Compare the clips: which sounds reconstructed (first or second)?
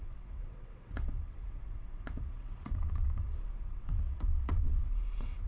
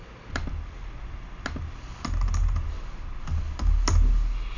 first